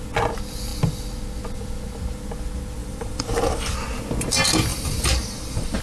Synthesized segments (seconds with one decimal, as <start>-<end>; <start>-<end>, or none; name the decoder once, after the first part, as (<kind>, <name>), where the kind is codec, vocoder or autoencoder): 2.8-3.7 (vocoder, BigVGAN v2); 4.7-5.8

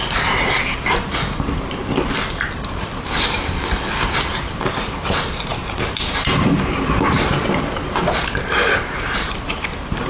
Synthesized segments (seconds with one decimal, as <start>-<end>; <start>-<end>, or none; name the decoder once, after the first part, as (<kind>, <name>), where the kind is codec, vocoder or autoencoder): 0.0-10.1 (vocoder, BigVGAN v2)

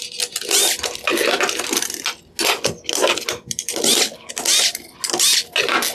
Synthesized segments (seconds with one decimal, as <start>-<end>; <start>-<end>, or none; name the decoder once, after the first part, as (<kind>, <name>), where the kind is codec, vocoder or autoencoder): 3.0-4.3 (vocoder, BigVGAN v2)